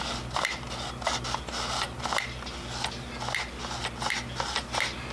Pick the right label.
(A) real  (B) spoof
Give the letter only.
A